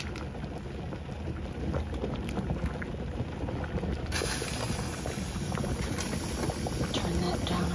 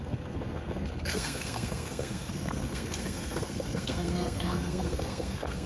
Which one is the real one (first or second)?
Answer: first